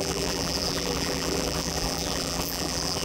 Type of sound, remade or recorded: remade